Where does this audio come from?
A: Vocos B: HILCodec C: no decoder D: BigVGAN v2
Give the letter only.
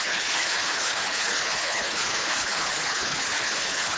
B